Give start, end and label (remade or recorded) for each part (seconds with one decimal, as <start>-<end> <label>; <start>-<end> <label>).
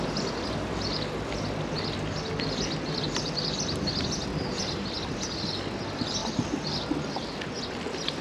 0.0-8.2 recorded